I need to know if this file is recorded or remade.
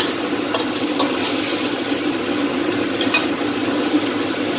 recorded